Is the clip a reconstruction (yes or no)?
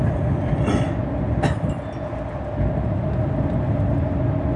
no